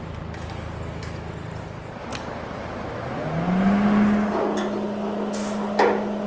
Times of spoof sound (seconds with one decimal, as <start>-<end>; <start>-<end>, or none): none